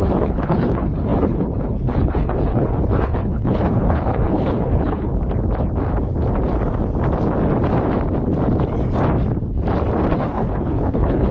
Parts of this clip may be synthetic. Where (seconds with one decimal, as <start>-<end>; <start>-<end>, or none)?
0.0-5.1; 10.1-11.3